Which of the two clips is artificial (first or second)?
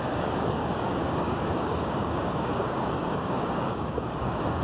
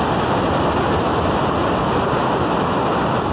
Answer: first